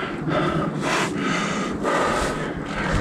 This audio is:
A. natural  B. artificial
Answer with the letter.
A